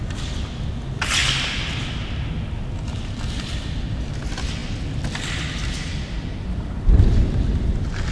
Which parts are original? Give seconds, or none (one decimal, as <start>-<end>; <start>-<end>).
0.0-8.1